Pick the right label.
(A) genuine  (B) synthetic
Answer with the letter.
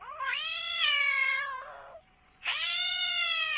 B